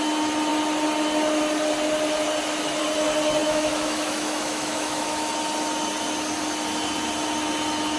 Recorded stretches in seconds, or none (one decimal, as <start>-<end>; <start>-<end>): 0.0-3.4; 5.3-8.0